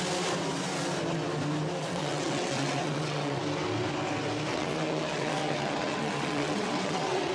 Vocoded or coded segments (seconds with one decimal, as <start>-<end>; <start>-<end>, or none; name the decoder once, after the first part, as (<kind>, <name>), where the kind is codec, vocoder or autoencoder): 1.8-3.4 (vocoder, WaveNeXt); 4.5-7.3